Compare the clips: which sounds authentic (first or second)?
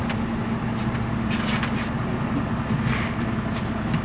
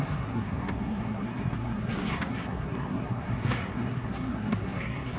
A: first